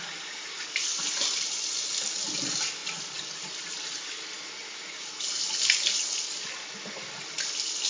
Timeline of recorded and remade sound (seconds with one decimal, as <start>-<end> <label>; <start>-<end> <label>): 0.0-7.9 recorded